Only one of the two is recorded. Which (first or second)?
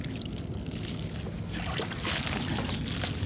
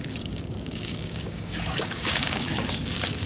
first